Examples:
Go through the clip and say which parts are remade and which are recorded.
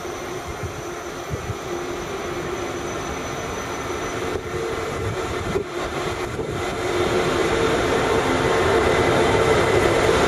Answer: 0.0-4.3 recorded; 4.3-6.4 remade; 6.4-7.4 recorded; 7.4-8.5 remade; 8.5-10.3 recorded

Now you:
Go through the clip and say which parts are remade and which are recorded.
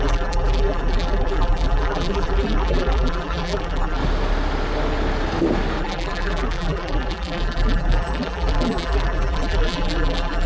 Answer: 0.0-4.0 remade; 4.0-5.8 recorded; 5.8-10.5 remade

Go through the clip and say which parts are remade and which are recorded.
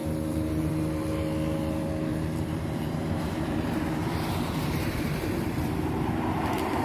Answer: 0.0-0.7 remade; 0.7-2.1 recorded; 2.1-6.2 remade; 6.2-6.8 recorded